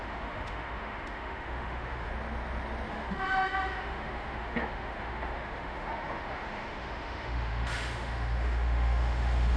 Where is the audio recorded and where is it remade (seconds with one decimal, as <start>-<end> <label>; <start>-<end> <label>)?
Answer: 0.0-2.1 remade; 2.1-2.9 recorded; 2.9-9.6 remade

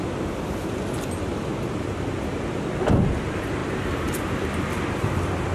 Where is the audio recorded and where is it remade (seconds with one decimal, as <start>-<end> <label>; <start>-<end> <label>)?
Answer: 0.0-1.5 recorded; 1.5-2.1 remade; 2.1-3.6 recorded; 3.6-4.6 remade; 4.6-5.5 recorded